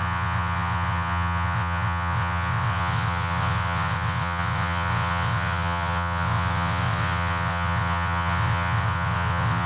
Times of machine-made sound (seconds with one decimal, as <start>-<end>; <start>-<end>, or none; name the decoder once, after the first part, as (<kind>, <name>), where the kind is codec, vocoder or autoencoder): 0.0-9.7 (vocoder, WaveNeXt)